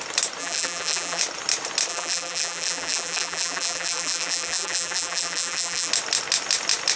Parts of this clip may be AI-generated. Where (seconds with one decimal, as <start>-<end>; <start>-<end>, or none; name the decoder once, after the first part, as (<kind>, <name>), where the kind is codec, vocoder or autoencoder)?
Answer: 0.4-1.2 (vocoder, BigVGAN v2); 1.9-5.9